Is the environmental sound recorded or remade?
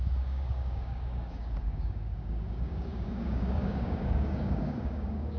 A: remade